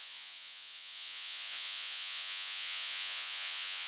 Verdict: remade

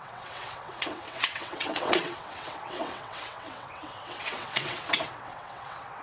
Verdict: remade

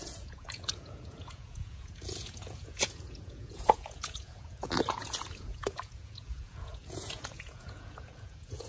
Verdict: remade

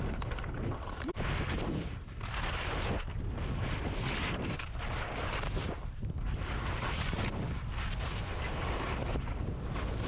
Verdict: recorded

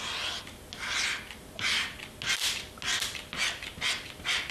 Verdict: recorded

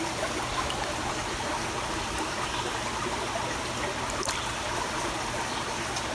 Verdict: recorded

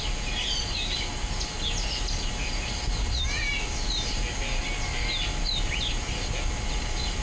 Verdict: recorded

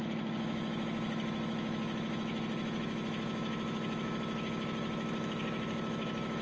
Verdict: remade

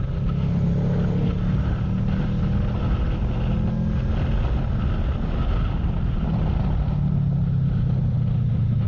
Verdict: recorded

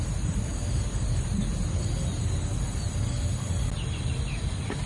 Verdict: recorded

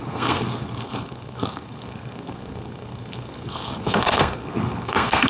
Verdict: remade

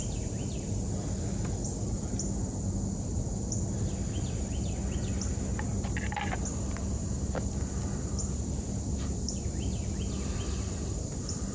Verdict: recorded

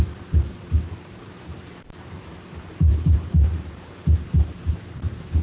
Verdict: remade